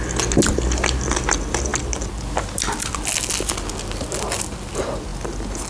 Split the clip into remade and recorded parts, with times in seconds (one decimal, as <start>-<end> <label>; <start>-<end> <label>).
0.0-5.7 recorded